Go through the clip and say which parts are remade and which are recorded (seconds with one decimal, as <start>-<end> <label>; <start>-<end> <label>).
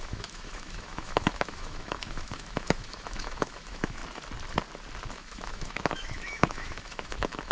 0.0-4.0 remade; 4.0-5.1 recorded; 5.1-7.5 remade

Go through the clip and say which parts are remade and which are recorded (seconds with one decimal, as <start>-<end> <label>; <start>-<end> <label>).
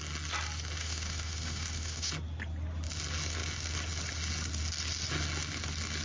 0.0-0.8 recorded; 0.8-2.1 remade; 2.1-6.0 recorded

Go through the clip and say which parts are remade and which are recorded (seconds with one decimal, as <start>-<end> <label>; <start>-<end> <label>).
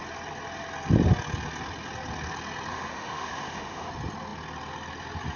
0.0-2.7 recorded; 2.7-3.9 remade; 3.9-5.4 recorded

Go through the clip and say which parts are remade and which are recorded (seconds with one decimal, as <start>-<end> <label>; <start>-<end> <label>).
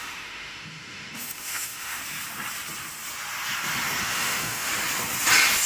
0.0-2.0 remade; 2.0-4.0 recorded; 4.0-4.7 remade; 4.7-5.7 recorded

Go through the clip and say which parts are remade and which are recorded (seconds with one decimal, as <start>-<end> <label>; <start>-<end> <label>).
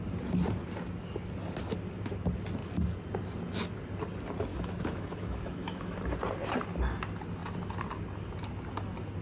0.0-4.5 recorded; 4.5-6.0 remade; 6.0-9.2 recorded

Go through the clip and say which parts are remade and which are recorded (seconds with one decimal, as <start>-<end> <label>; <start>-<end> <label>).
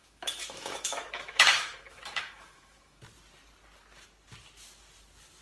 0.0-3.0 remade; 3.0-5.4 recorded